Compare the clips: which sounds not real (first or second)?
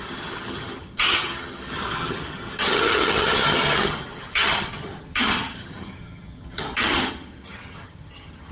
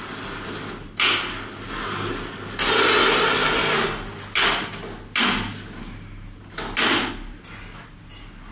first